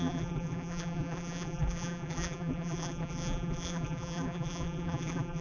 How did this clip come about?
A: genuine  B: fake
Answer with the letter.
B